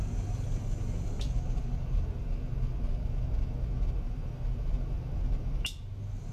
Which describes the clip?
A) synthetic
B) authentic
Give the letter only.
B